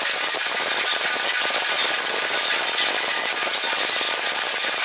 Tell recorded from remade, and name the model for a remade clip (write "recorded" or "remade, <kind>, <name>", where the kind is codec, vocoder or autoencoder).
recorded